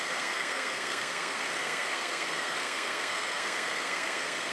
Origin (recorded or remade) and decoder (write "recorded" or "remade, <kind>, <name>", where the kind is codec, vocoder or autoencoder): remade, codec, SNAC